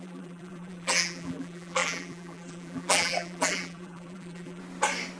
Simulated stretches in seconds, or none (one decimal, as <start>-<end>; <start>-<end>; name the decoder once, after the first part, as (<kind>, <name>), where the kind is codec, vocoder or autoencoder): 0.0-4.6 (vocoder, BigVGAN v2)